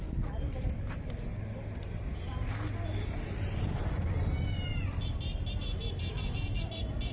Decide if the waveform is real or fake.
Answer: real